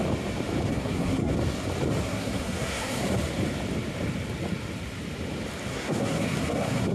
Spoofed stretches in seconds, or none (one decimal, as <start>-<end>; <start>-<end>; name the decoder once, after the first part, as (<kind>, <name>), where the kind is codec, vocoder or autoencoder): 0.7-1.3 (codec, SNAC); 2.0-3.0; 5.7-6.9